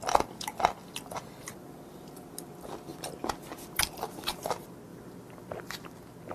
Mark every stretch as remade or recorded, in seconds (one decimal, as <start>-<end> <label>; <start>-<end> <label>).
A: 0.0-0.8 recorded; 0.8-2.3 remade; 2.3-6.3 recorded